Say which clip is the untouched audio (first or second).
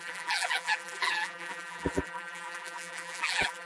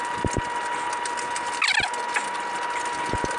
second